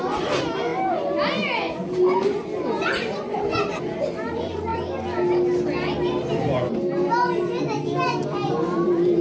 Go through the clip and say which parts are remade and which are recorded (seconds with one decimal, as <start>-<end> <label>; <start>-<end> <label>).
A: 0.0-9.2 recorded